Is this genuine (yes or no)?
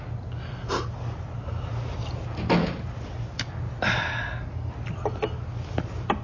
yes